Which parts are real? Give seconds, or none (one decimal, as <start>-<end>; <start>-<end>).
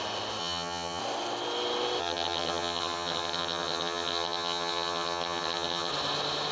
0.0-0.4; 1.0-2.0; 5.9-6.5